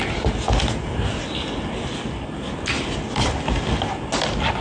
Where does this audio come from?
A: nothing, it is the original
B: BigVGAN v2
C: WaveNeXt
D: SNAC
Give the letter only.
A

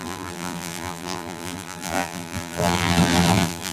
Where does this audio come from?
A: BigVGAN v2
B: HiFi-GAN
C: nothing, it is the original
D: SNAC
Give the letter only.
A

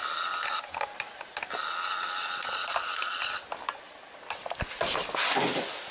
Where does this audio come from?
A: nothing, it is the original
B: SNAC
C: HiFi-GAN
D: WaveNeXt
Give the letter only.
A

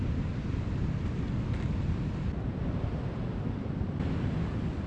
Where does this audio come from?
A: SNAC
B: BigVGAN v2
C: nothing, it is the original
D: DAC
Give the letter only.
C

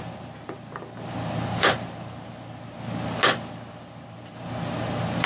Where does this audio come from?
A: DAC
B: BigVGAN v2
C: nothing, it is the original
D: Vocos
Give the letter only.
C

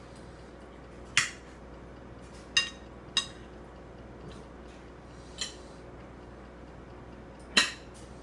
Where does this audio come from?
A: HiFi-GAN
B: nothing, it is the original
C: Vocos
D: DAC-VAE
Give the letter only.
B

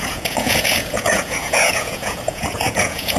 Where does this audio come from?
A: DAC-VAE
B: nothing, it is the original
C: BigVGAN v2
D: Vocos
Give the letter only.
D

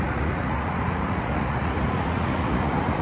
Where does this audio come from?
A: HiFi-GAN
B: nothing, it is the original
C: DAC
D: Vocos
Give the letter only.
D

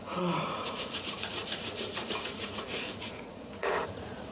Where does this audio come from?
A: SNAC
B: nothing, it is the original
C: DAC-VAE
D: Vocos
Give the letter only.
D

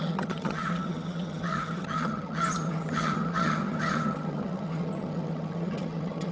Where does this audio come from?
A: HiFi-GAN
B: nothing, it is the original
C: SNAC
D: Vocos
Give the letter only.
A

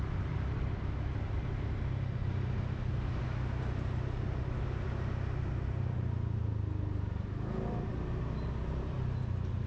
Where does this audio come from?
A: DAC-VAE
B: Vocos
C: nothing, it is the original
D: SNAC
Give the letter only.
C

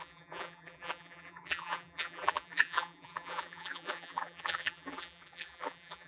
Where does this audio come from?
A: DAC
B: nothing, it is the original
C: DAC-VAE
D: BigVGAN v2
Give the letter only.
D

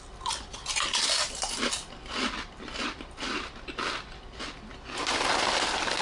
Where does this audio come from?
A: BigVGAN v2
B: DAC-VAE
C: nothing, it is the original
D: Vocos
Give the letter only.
C